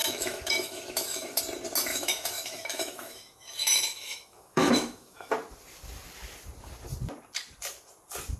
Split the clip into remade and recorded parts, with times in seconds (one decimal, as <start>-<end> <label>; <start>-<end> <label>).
0.0-1.4 remade; 1.4-1.9 recorded; 1.9-5.3 remade; 5.3-8.4 recorded